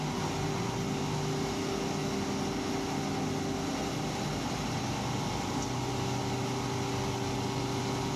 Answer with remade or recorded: recorded